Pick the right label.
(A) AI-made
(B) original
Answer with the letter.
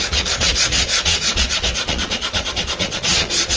A